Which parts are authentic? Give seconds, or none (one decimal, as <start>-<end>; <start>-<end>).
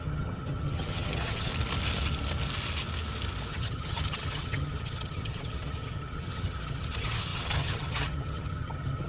1.5-3.5